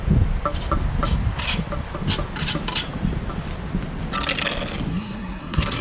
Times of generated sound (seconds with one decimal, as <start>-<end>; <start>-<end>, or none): 4.9-5.8